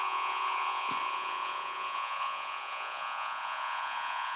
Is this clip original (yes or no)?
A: no